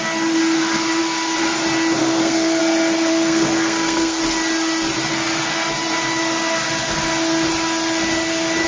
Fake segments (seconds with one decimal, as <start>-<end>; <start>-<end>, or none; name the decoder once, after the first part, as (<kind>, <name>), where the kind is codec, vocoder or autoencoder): 2.0-2.6 (codec, SNAC); 3.1-4.2